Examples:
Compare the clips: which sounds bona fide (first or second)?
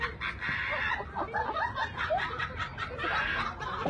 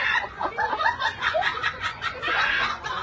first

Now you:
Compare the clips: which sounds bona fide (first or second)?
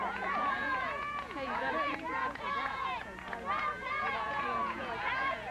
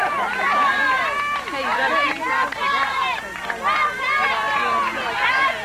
second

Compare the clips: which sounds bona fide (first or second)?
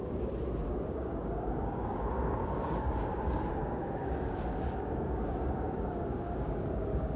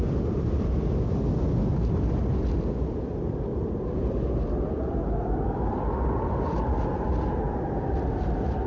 second